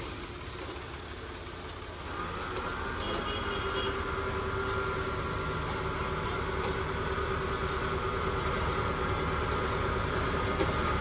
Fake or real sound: real